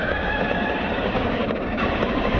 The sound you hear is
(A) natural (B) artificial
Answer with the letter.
B